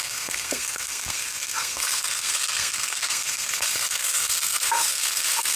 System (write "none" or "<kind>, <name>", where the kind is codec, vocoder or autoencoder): codec, SNAC